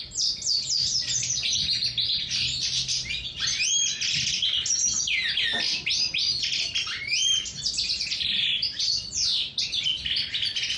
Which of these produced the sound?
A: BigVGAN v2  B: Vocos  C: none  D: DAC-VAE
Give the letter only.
C